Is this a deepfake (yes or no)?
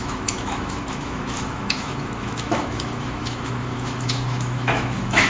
yes